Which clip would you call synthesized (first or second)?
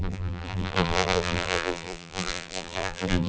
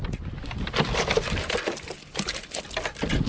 first